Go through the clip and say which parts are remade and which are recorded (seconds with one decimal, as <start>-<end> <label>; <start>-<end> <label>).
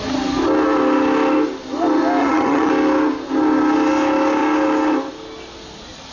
0.0-2.2 recorded; 2.2-2.7 remade; 2.7-6.1 recorded